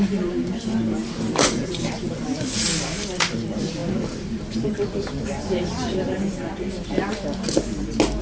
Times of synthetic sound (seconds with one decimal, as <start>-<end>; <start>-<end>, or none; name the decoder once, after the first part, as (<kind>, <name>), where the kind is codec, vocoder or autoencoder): none